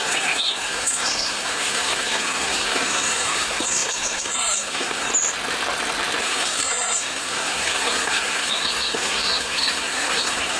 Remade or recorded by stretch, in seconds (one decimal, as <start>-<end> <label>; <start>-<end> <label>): 0.0-5.1 remade; 5.1-6.2 recorded; 6.2-10.6 remade